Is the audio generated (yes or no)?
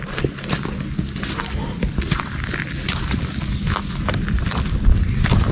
no